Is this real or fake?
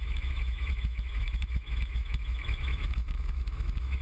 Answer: fake